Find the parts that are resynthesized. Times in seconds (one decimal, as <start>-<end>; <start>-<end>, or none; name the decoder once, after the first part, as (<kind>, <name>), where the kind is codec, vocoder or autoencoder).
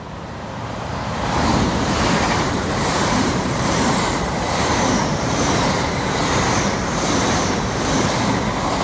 1.5-6.3 (vocoder, BigVGAN v2)